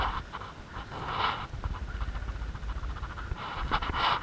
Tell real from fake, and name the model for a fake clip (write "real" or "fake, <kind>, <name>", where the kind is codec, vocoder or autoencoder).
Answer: real